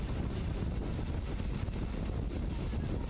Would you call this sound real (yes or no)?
yes